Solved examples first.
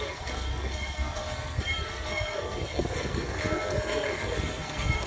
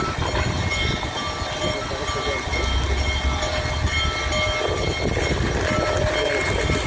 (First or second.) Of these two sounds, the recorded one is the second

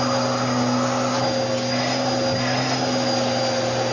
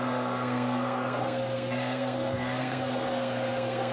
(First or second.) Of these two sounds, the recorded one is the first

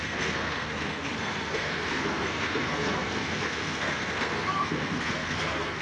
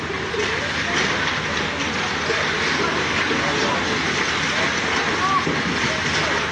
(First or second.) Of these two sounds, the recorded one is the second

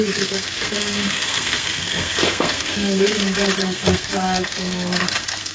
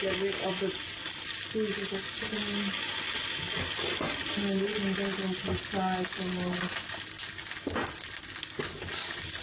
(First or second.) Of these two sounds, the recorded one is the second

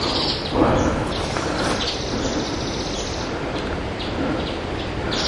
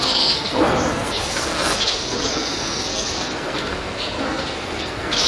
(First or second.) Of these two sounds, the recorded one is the first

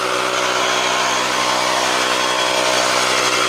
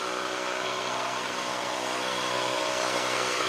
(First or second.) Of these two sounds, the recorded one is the first